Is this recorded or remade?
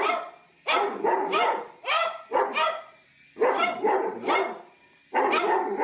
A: recorded